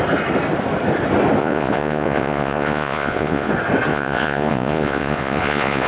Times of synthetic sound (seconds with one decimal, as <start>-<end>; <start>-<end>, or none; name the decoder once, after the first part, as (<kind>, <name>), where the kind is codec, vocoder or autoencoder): 1.4-3.5 (vocoder, Vocos); 3.9-5.9